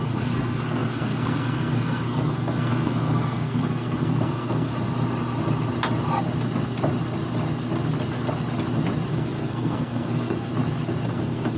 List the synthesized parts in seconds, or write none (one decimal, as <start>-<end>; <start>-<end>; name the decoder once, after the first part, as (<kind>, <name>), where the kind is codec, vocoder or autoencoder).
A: 0.0-4.7 (codec, SNAC); 9.1-10.5; 11.1-11.6